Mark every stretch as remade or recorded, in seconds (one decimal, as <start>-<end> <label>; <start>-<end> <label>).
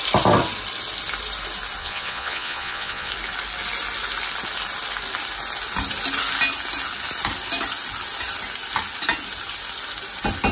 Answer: 0.0-1.8 recorded; 1.8-3.1 remade; 3.1-10.5 recorded